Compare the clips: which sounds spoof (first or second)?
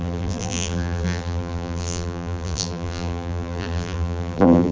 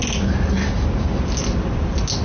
first